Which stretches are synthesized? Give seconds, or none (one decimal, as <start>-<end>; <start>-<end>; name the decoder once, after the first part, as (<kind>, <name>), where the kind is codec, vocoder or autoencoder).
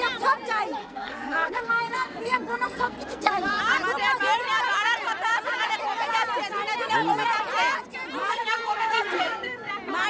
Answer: 0.8-3.6 (codec, SNAC); 8.2-9.7